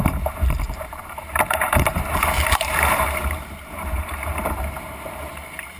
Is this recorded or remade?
remade